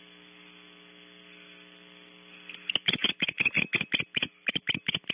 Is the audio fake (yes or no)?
no